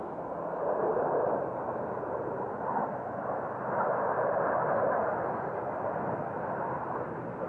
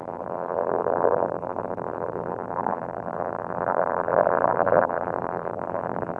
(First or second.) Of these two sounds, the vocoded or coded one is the second